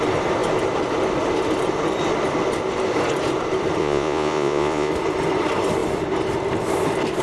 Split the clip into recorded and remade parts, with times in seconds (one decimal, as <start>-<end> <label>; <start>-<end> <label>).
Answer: 0.0-3.8 recorded; 3.8-4.9 remade; 4.9-7.2 recorded